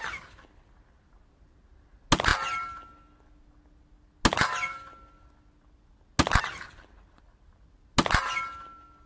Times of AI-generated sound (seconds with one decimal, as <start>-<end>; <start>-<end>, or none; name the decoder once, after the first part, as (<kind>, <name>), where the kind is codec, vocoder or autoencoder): none